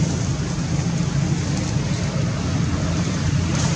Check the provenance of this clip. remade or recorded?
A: recorded